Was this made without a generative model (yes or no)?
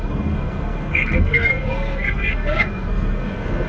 no